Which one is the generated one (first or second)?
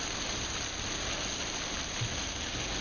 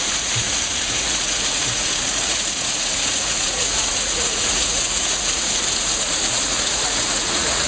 second